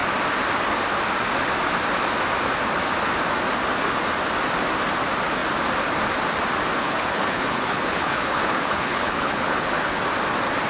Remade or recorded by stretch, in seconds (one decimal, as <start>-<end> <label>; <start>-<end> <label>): 0.0-6.7 recorded; 6.7-10.0 remade; 10.0-10.7 recorded